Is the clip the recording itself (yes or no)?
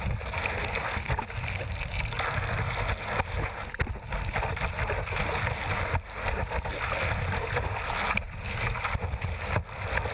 yes